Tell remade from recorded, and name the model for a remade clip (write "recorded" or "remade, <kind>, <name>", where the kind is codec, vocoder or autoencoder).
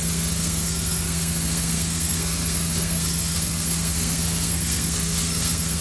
remade, codec, SNAC